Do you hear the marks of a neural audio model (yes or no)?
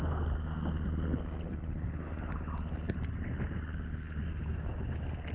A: no